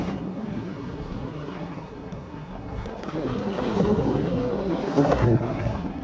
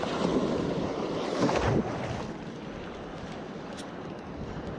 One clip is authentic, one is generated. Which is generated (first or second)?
first